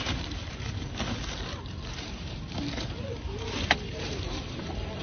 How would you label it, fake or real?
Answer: fake